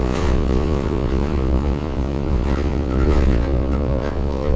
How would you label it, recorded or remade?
remade